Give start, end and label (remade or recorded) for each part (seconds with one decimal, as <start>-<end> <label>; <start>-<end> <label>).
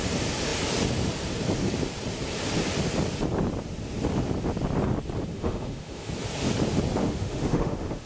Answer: 0.0-5.3 recorded; 5.3-6.1 remade; 6.1-7.0 recorded; 7.0-8.1 remade